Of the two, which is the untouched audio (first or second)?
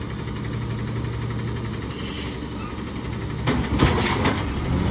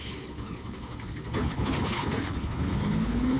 first